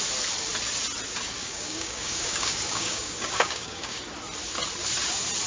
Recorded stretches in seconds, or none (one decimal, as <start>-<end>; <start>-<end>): 0.0-1.4; 4.0-5.5